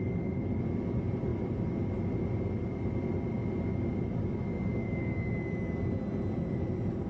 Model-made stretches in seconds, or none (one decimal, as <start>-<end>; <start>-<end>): 4.8-5.3